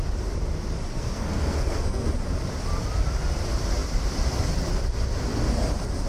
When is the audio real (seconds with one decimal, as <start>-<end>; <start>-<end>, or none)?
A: 0.0-0.9; 2.1-6.1